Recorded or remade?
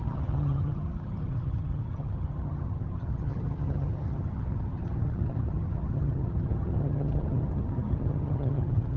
remade